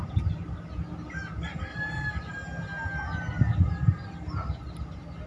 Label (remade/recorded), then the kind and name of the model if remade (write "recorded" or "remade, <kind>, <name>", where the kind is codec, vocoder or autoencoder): recorded